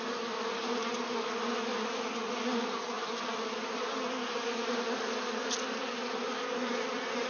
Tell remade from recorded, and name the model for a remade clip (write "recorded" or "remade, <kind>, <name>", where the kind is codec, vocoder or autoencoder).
recorded